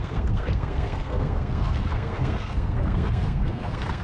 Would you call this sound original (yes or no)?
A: no